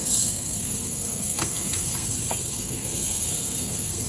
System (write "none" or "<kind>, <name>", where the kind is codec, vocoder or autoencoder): codec, SNAC